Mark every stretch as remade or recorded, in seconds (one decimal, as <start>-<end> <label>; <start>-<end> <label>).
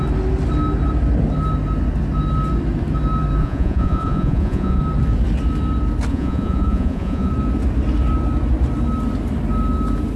0.0-3.4 recorded; 3.4-4.8 remade; 4.8-6.1 recorded; 6.1-7.3 remade; 7.3-10.2 recorded